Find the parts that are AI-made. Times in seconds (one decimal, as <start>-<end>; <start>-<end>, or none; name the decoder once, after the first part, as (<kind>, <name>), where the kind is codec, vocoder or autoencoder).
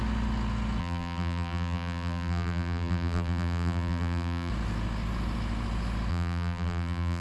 0.8-4.5 (vocoder, BigVGAN v2); 6.1-7.2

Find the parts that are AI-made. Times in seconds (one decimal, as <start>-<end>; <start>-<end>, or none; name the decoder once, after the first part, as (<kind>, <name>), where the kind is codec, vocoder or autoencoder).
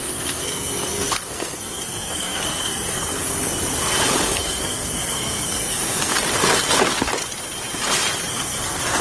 0.0-3.5 (codec, SNAC); 4.2-6.1; 8.3-9.0